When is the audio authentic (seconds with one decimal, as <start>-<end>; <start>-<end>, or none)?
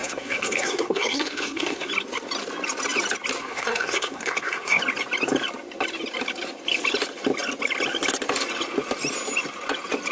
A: 1.9-3.4; 4.8-10.1